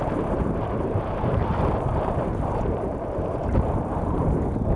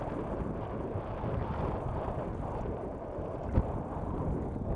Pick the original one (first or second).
second